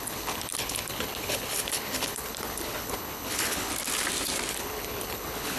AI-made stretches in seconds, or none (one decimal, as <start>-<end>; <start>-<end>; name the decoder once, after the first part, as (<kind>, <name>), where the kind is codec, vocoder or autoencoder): 0.0-3.7 (codec, HILCodec); 4.5-5.6